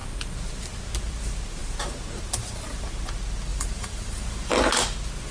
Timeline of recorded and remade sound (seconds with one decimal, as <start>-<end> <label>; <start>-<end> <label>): 0.0-3.5 recorded; 3.5-4.6 remade; 4.6-5.3 recorded